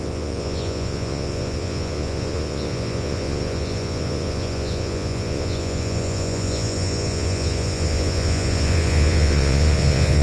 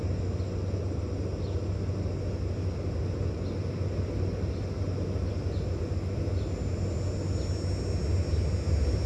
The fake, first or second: first